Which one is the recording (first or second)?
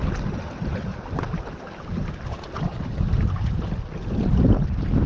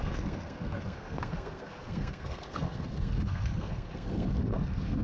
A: first